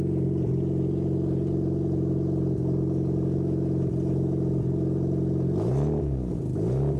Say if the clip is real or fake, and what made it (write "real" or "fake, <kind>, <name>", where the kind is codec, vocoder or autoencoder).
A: real